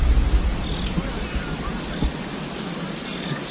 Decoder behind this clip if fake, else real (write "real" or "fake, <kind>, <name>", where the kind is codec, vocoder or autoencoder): real